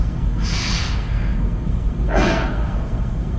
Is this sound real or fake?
fake